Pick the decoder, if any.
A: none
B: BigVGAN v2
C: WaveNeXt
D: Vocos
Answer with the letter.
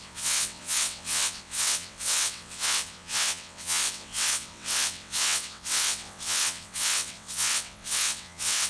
C